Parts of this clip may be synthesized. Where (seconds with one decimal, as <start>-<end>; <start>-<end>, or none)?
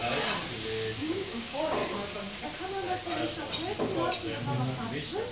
1.0-1.8